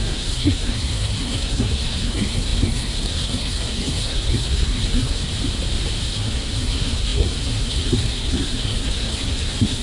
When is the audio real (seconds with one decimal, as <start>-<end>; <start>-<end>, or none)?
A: 5.3-6.0

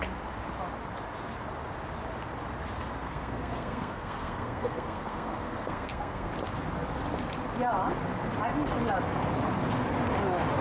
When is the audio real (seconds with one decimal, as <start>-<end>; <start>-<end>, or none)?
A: 0.0-3.0; 6.3-10.6

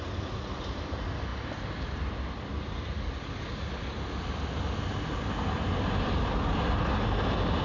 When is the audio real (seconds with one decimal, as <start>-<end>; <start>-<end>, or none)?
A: 0.0-7.6

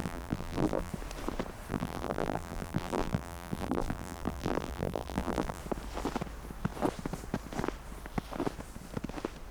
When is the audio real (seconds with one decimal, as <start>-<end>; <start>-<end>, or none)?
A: 0.9-1.7; 5.6-9.5